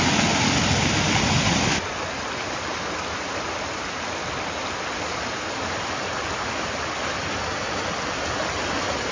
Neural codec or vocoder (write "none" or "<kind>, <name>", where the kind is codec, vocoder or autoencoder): none